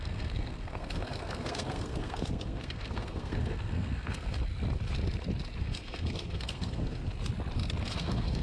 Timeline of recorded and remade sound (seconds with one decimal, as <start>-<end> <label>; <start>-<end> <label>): 0.0-4.5 remade; 4.5-5.6 recorded; 5.6-7.0 remade; 7.0-7.8 recorded; 7.8-8.4 remade